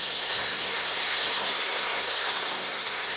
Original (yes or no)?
no